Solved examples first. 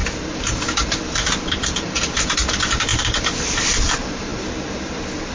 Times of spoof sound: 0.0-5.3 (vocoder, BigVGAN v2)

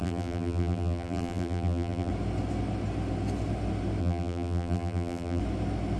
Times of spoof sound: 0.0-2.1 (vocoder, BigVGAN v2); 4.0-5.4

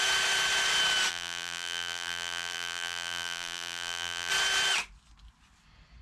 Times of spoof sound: 1.1-4.3 (vocoder, BigVGAN v2)